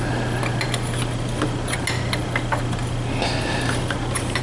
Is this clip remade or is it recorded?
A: recorded